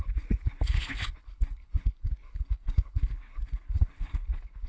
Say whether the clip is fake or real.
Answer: fake